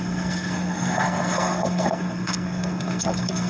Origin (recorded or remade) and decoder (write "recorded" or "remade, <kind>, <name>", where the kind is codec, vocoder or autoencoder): remade, codec, SNAC